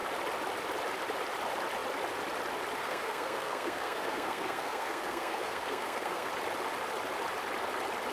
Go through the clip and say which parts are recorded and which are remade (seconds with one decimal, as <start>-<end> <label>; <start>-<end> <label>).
0.0-2.8 recorded; 2.8-6.3 remade; 6.3-8.1 recorded